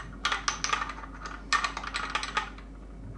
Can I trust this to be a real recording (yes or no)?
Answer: yes